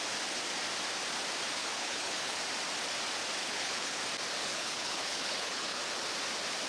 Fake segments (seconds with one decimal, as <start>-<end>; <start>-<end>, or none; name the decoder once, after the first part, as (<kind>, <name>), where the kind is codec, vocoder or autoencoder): 1.6-2.4 (codec, HILCodec); 3.4-4.0; 4.4-5.8